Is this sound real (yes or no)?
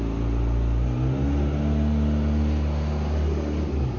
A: yes